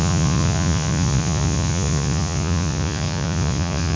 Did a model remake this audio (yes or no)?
yes